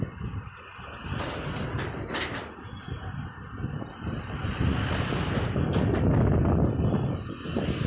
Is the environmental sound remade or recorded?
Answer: recorded